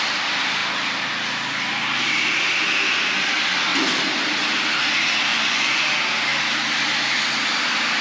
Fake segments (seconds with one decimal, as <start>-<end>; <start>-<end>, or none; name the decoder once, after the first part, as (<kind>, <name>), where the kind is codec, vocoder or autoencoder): 5.3-5.8 (vocoder, Vocos)